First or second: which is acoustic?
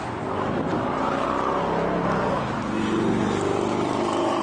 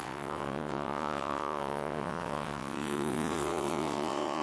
first